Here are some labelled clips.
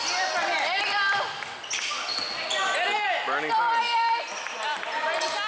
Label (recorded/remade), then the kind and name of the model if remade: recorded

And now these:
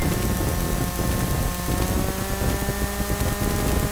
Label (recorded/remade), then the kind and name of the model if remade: recorded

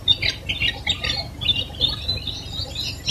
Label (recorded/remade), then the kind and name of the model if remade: recorded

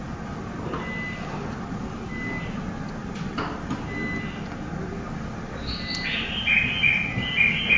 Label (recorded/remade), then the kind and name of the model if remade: recorded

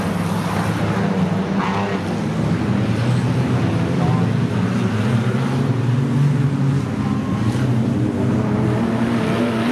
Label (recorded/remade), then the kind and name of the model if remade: recorded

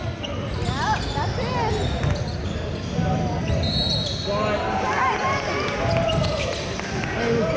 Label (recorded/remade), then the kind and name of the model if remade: recorded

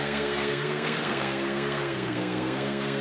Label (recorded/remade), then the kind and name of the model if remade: remade, codec, SNAC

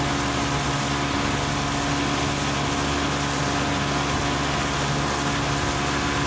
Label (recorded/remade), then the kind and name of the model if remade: recorded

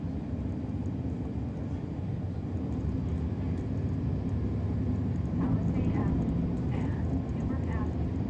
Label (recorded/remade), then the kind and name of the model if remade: recorded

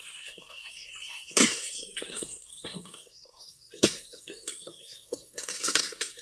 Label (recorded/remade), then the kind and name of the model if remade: remade, codec, SNAC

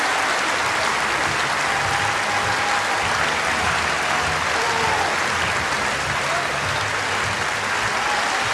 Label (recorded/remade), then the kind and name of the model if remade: recorded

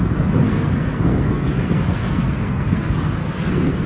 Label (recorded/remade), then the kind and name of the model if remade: remade, codec, SNAC